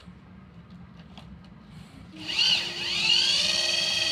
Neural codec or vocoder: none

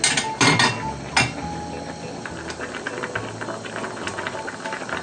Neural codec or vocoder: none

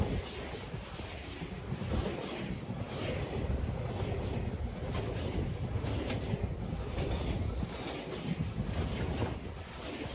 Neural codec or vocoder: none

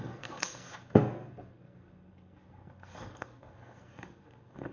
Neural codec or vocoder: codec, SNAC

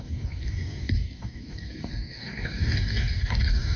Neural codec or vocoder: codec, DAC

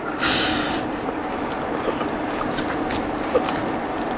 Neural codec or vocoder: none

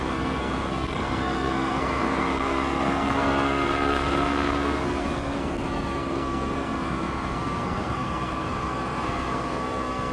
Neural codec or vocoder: codec, SNAC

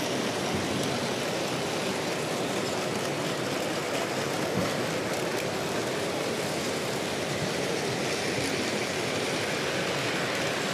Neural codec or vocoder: none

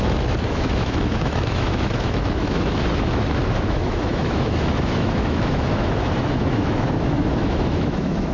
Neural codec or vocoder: autoencoder, DAC-VAE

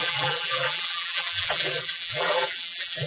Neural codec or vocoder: vocoder, BigVGAN v2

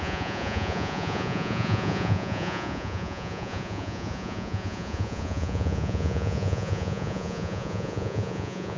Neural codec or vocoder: vocoder, Vocos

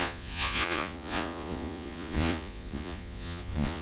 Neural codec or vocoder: vocoder, Vocos